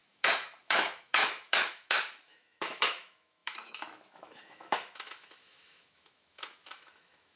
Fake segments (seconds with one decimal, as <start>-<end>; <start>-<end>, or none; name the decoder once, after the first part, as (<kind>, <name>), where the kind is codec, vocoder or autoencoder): 0.0-7.4 (autoencoder, DAC-VAE)